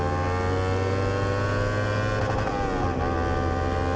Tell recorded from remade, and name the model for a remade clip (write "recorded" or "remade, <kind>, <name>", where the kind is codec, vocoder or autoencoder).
recorded